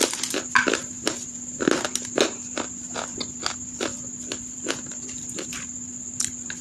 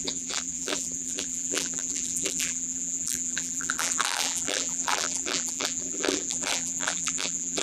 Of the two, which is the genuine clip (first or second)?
first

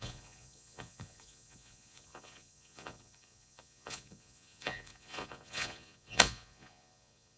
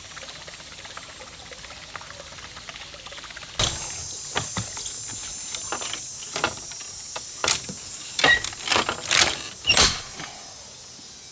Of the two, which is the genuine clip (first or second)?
second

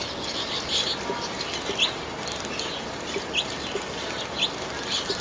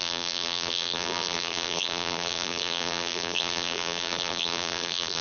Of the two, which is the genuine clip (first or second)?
first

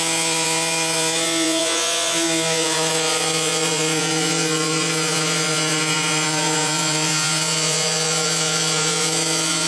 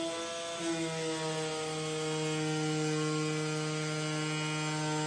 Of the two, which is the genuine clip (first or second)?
second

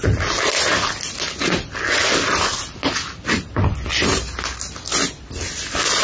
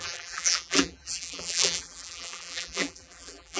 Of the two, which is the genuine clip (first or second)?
first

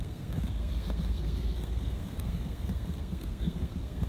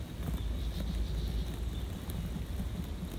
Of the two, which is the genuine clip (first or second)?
second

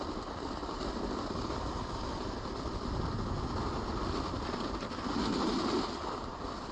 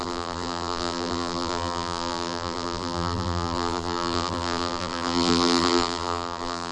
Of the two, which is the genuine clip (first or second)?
first